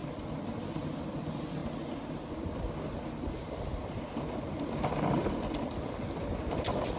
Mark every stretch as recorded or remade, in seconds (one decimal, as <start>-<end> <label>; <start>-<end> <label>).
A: 0.0-7.0 recorded